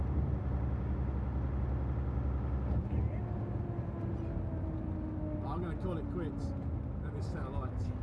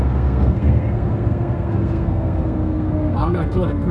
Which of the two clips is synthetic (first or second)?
second